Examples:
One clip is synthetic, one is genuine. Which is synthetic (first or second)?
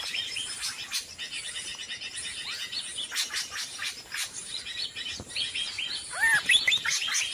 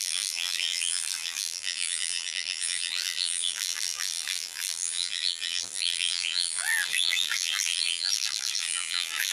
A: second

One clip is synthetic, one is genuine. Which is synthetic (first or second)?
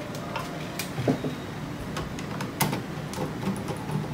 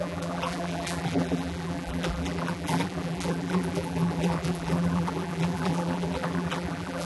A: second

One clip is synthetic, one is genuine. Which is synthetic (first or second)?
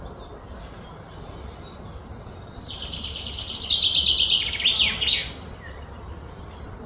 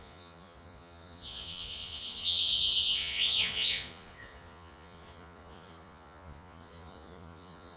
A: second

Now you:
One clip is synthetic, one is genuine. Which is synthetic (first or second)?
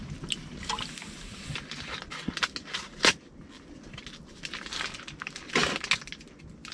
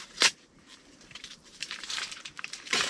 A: second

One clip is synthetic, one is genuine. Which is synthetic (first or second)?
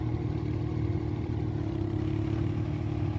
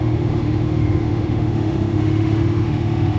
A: second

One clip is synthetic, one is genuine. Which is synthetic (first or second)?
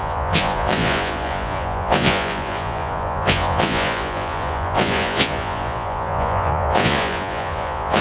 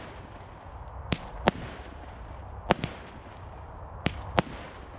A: first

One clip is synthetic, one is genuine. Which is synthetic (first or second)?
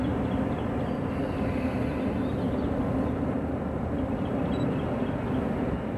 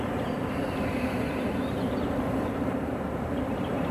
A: second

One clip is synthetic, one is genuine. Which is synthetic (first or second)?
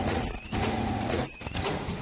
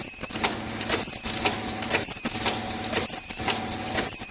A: first